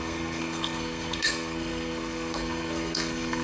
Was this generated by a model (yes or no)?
yes